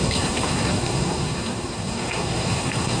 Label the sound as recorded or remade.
remade